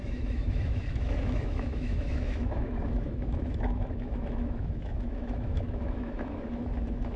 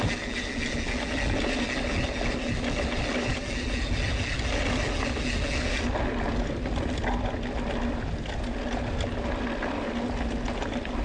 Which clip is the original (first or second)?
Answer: second